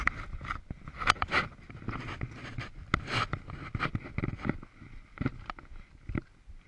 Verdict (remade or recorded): recorded